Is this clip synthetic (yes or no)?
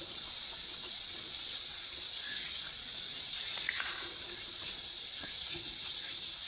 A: yes